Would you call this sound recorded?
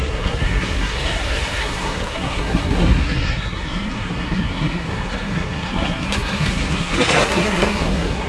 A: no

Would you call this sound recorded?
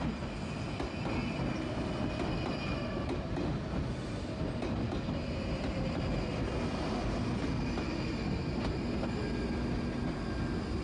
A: yes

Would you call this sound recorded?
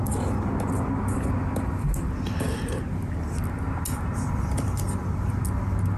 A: yes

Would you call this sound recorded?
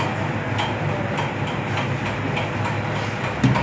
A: yes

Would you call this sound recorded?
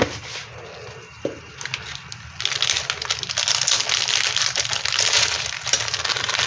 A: yes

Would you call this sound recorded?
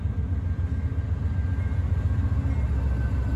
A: yes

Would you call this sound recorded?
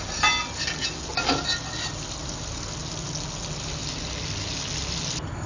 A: yes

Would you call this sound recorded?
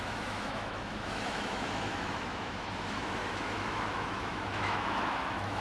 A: no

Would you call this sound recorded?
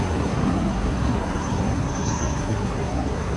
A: no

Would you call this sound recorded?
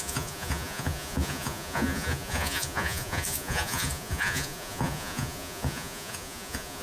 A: no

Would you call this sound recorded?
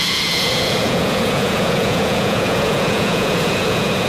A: no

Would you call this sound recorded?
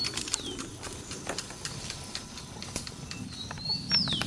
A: yes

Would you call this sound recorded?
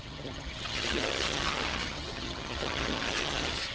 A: no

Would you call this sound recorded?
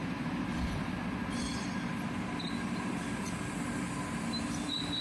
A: no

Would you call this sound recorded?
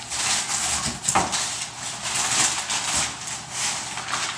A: yes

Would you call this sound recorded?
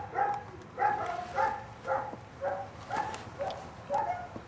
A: yes